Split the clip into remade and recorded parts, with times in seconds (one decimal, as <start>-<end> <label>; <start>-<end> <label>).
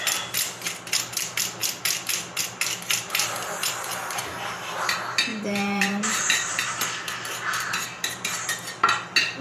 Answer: 0.0-5.3 recorded; 5.3-6.6 remade; 6.6-9.4 recorded